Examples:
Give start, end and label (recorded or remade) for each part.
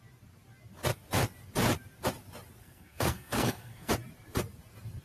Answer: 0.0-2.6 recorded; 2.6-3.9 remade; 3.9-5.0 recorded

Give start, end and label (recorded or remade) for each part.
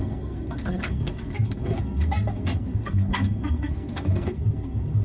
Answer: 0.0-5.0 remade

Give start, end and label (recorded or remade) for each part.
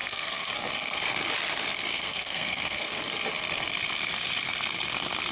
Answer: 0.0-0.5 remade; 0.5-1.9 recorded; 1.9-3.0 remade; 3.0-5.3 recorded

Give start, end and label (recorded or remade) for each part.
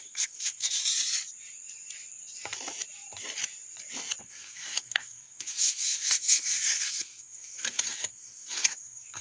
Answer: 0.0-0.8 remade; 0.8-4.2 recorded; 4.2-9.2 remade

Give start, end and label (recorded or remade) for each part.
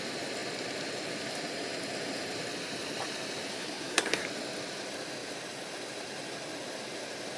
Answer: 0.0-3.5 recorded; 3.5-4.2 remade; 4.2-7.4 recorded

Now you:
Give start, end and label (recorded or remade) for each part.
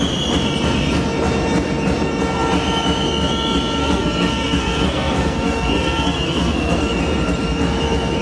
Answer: 0.0-3.8 recorded; 3.8-7.0 remade; 7.0-8.2 recorded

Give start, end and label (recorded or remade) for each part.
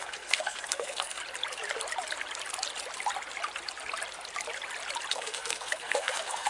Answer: 0.0-1.2 remade; 1.2-5.1 recorded; 5.1-6.5 remade